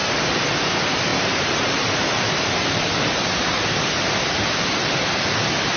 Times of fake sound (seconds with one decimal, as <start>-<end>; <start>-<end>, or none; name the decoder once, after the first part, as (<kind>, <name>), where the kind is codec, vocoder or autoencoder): 1.1-4.6 (vocoder, BigVGAN v2)